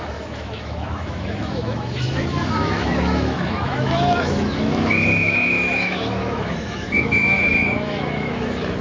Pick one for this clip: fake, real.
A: fake